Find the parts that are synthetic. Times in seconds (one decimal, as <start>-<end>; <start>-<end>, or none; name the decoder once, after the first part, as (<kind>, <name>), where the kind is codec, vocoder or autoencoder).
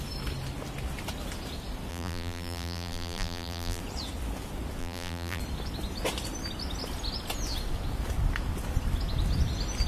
1.9-3.8 (vocoder, BigVGAN v2); 4.8-5.4